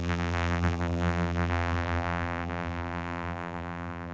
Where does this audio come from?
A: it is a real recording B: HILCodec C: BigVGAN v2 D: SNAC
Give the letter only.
C